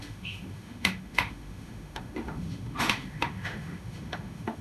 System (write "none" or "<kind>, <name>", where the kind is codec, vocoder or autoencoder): autoencoder, DAC-VAE